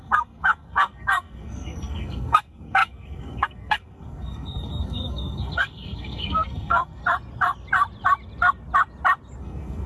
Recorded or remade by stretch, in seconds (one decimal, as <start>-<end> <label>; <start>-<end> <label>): 0.0-7.0 remade; 7.0-9.4 recorded; 9.4-9.9 remade